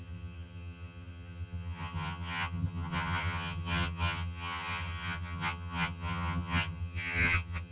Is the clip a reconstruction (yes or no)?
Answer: yes